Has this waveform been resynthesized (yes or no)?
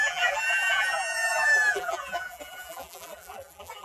yes